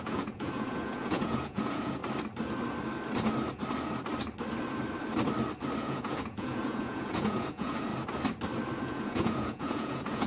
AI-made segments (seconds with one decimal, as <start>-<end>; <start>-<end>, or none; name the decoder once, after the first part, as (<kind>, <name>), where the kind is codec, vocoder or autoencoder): 0.0-2.0 (vocoder, Vocos); 5.8-7.9; 8.8-10.3